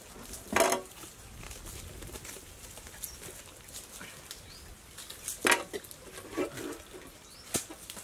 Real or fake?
real